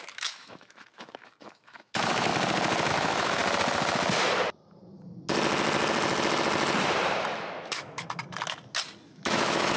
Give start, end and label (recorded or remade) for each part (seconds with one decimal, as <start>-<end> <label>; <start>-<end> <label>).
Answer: 0.0-2.3 remade; 2.3-2.9 recorded; 2.9-3.4 remade; 3.4-7.3 recorded; 7.3-8.2 remade; 8.2-9.1 recorded; 9.1-9.8 remade